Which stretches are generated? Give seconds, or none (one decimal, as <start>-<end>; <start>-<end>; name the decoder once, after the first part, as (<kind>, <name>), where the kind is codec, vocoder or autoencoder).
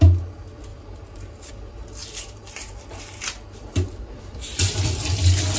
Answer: 0.7-1.5 (vocoder, BigVGAN v2); 2.0-2.8; 3.7-4.2